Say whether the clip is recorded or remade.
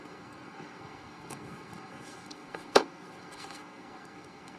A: remade